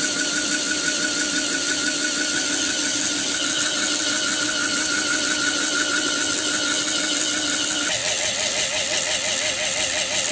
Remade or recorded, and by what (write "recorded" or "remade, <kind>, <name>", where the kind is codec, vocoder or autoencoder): recorded